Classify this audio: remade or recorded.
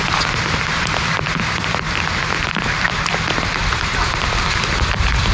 remade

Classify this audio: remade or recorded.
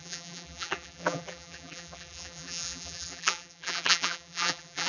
remade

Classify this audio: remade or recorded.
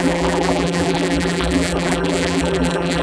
remade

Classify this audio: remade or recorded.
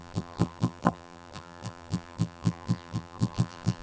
remade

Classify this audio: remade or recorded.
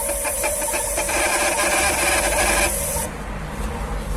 remade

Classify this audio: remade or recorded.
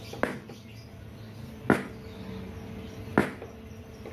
recorded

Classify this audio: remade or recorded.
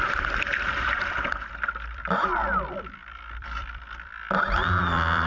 remade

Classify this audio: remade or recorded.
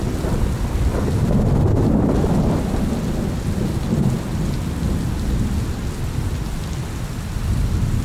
recorded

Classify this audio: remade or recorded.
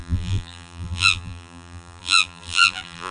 remade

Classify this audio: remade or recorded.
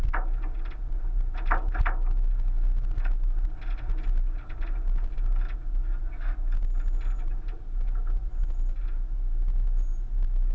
recorded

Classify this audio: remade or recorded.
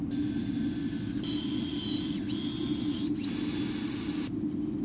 recorded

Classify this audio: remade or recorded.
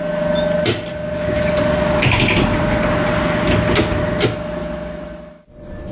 recorded